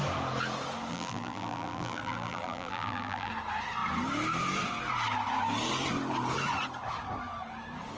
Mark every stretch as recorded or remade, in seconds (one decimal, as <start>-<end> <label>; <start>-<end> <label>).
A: 0.0-0.9 recorded; 0.9-3.3 remade; 3.3-8.0 recorded